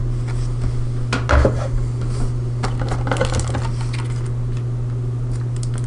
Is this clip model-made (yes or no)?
no